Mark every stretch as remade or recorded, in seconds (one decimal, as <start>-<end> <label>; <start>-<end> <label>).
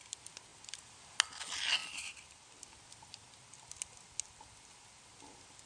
0.0-5.7 recorded